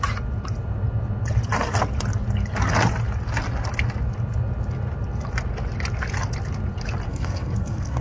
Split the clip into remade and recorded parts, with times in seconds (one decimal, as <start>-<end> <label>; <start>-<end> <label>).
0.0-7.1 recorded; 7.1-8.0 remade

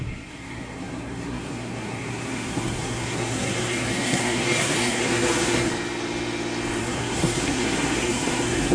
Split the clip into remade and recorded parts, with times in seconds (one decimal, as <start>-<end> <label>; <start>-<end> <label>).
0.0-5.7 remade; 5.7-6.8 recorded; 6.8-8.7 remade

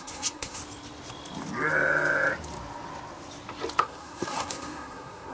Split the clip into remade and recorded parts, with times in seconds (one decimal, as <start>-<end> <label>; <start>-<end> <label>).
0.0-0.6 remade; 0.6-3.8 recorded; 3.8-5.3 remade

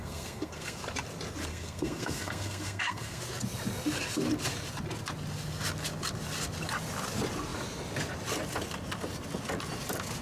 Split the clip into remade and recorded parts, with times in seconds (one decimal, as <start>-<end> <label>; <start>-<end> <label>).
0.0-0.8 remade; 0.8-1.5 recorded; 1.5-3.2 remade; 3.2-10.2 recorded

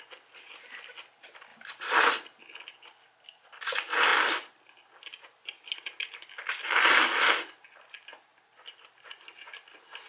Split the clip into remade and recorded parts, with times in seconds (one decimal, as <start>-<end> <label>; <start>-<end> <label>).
0.0-10.1 recorded

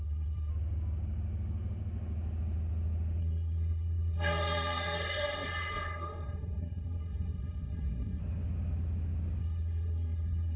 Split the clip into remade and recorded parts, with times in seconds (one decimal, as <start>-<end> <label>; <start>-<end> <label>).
0.0-0.5 remade; 0.5-3.2 recorded; 3.2-8.2 remade; 8.2-9.4 recorded; 9.4-10.6 remade

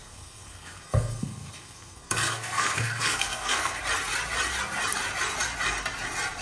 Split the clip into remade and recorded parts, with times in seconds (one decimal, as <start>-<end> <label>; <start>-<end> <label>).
0.0-3.8 remade; 3.8-6.4 recorded